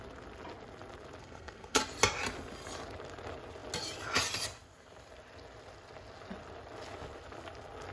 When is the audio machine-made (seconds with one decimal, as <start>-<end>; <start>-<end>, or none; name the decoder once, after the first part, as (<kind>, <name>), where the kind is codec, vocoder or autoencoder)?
1.2-1.8 (codec, SNAC)